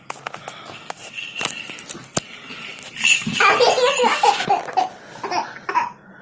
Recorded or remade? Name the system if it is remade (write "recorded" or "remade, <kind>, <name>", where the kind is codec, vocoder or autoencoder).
recorded